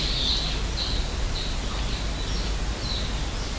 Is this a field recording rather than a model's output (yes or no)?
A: yes